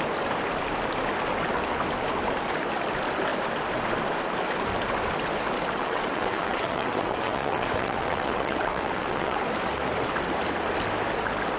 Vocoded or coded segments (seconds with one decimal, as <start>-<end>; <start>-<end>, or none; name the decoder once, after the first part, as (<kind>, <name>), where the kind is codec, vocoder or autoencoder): 5.8-9.4 (vocoder, WaveNeXt)